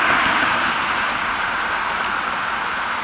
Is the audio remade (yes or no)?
no